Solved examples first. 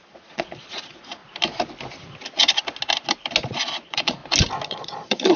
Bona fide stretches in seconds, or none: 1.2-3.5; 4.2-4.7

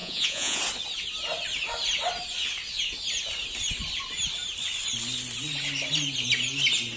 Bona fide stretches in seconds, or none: 0.6-7.0

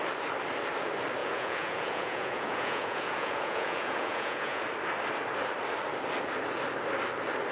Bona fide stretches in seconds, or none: 0.0-1.2; 4.6-7.5